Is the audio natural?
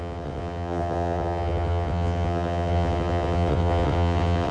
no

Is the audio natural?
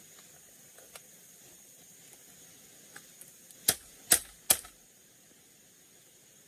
yes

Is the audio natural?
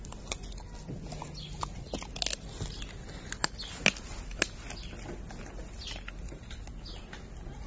yes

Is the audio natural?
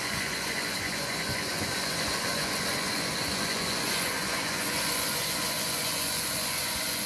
no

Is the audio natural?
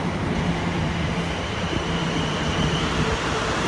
yes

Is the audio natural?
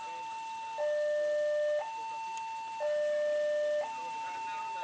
yes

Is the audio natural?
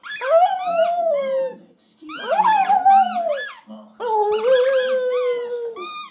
yes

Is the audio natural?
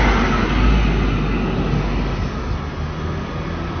yes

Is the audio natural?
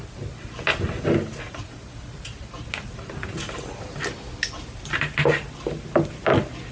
yes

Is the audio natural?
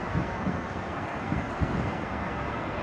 no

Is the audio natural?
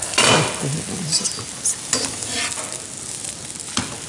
yes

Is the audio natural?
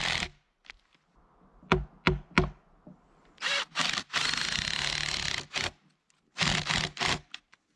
yes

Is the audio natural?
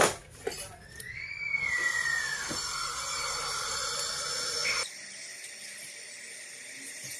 yes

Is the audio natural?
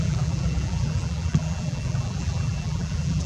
no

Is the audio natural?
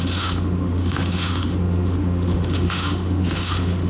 no